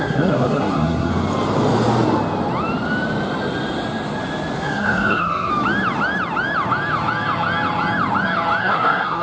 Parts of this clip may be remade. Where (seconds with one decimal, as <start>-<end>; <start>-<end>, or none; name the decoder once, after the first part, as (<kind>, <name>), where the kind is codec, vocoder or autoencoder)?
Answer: 0.0-1.1 (codec, SNAC); 4.6-5.5; 8.6-9.2